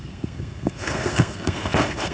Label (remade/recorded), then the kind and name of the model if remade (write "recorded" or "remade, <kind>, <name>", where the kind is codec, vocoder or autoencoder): remade, codec, SNAC